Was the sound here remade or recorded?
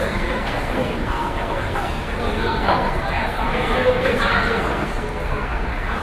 remade